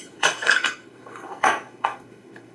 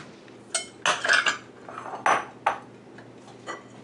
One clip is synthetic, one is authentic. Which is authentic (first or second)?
second